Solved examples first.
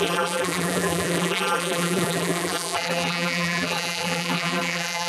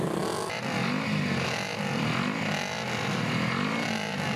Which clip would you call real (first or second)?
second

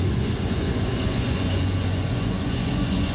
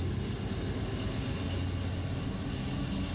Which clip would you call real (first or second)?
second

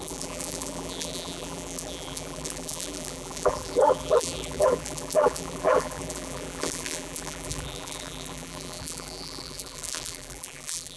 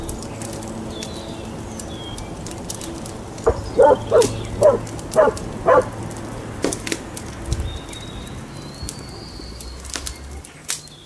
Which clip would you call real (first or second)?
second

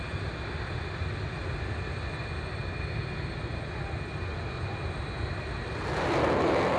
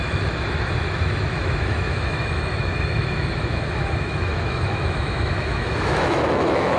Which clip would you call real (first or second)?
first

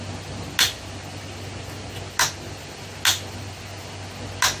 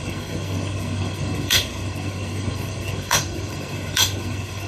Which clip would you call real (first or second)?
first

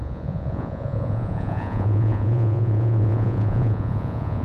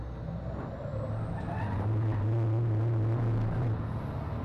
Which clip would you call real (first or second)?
second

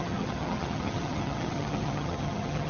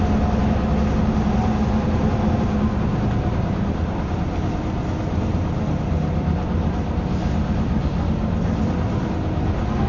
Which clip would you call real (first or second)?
second